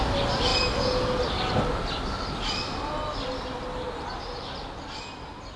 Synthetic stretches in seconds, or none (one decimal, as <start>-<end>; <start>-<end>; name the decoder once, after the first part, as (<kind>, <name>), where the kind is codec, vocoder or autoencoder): none